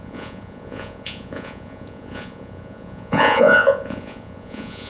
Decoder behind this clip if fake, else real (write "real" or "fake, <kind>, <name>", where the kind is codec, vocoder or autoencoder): fake, vocoder, Vocos